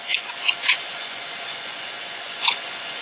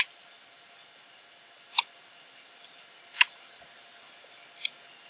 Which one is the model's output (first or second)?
first